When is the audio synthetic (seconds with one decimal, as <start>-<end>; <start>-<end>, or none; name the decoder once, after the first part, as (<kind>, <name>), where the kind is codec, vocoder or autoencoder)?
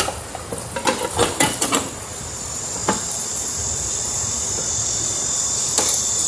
none